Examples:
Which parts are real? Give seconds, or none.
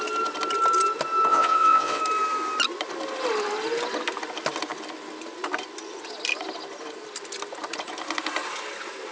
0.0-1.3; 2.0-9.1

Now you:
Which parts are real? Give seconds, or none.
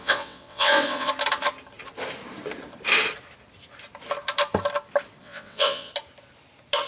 1.1-5.2; 5.9-6.9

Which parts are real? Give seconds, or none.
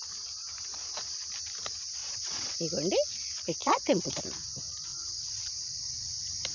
0.0-2.0; 2.5-3.6; 4.2-4.9; 6.1-6.5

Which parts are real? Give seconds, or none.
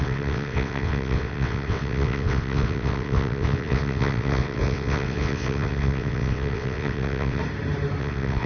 7.4-8.0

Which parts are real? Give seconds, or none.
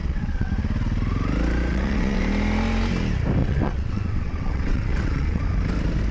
0.5-1.7; 2.2-3.4; 5.4-6.1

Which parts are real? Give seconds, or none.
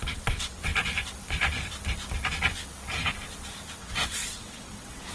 0.7-3.8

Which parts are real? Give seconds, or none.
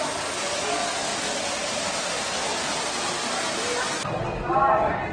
0.0-5.1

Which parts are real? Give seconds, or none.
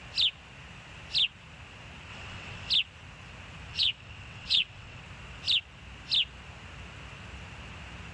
0.0-2.1; 2.7-3.7; 5.0-8.1